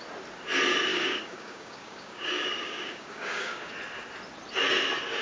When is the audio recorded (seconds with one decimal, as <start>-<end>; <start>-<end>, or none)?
0.0-0.9; 3.7-5.2